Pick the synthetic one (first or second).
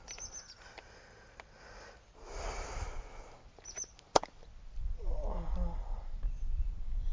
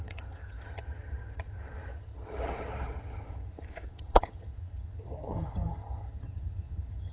second